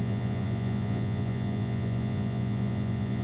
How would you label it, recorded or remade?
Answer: remade